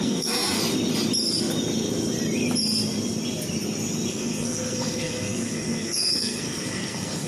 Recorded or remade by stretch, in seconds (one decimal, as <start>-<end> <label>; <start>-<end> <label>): 0.0-0.6 remade; 0.6-4.1 recorded; 4.1-7.3 remade

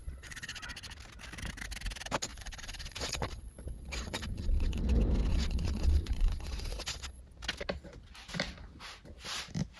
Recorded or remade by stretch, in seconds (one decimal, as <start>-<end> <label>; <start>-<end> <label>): 0.0-0.6 remade; 0.6-2.3 recorded; 2.3-4.8 remade; 4.8-5.3 recorded; 5.3-7.2 remade; 7.2-9.8 recorded

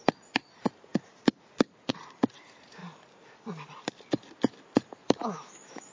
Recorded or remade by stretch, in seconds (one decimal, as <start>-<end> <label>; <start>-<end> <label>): 0.0-5.2 recorded; 5.2-5.9 remade